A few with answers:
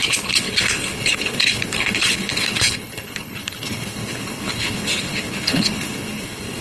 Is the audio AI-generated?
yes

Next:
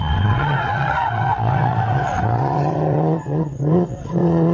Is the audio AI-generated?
yes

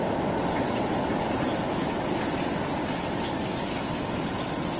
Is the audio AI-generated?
no